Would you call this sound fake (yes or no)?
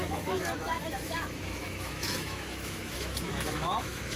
yes